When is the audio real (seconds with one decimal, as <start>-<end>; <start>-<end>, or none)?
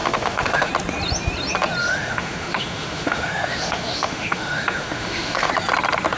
0.7-1.8; 5.5-6.2